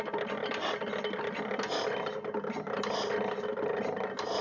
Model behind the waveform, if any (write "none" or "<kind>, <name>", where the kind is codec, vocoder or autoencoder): none